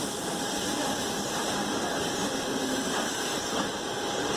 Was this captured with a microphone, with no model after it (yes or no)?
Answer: no